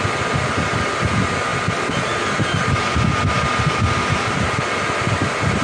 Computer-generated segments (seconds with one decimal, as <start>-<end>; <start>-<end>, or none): none